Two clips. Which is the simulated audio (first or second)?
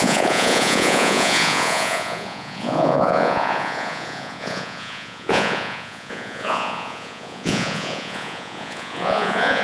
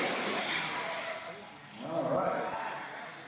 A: first